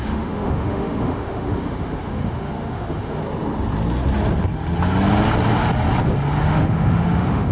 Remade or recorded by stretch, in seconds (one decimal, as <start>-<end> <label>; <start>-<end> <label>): 0.0-3.2 remade; 3.2-6.4 recorded; 6.4-7.5 remade